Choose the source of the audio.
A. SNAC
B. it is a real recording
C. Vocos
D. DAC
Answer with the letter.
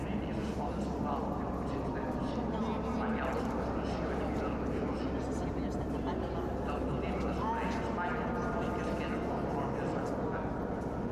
B